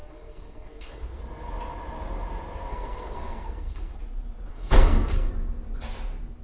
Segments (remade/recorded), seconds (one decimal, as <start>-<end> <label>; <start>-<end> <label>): 0.0-1.2 remade; 1.2-2.7 recorded; 2.7-4.0 remade; 4.0-4.5 recorded; 4.5-5.3 remade; 5.3-6.4 recorded